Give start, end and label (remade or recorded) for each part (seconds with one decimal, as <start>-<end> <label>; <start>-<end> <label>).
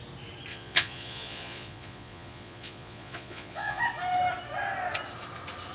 0.0-0.5 recorded; 0.5-3.8 remade; 3.8-5.7 recorded